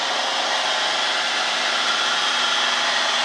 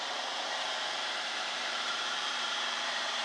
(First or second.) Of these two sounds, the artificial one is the second